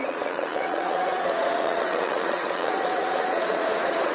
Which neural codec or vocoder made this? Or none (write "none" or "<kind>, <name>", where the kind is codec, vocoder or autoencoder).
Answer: vocoder, Vocos